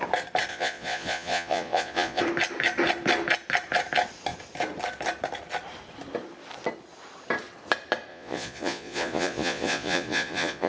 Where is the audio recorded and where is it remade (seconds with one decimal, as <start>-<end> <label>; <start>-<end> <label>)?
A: 0.0-0.5 recorded; 0.5-2.2 remade; 2.2-8.1 recorded; 8.1-10.7 remade